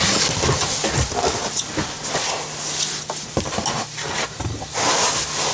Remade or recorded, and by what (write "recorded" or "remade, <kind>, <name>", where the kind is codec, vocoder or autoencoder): recorded